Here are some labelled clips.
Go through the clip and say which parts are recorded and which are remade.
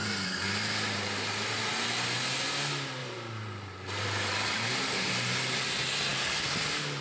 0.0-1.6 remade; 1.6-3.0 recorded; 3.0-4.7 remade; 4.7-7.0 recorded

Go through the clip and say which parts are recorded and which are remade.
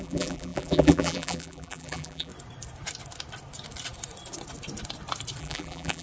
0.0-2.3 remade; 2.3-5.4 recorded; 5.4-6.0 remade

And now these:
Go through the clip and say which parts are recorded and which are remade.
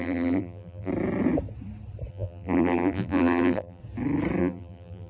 0.0-0.9 remade; 0.9-2.1 recorded; 2.1-3.8 remade; 3.8-4.4 recorded; 4.4-5.1 remade